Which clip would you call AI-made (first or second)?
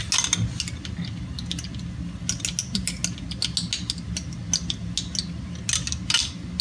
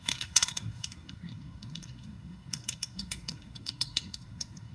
second